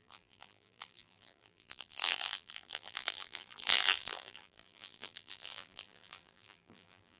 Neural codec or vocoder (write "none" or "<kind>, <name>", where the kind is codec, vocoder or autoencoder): vocoder, BigVGAN v2